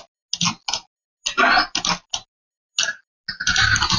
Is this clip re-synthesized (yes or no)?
no